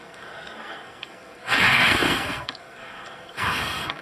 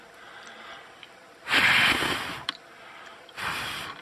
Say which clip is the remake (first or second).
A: first